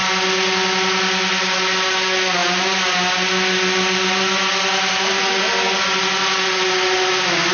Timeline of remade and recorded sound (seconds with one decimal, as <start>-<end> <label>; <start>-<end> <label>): 0.0-7.5 recorded